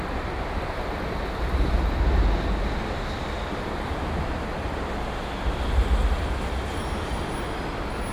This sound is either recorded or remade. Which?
recorded